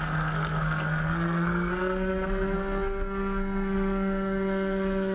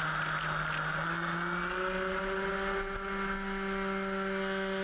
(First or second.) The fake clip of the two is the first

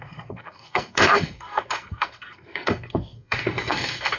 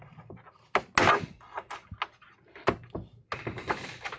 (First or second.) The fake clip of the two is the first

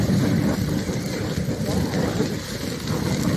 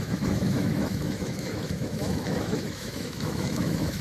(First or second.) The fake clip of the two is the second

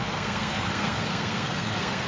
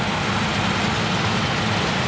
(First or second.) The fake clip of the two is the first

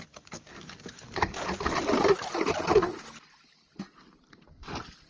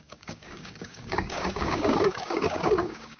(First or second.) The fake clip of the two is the second